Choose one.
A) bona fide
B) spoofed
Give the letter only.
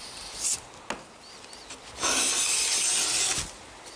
A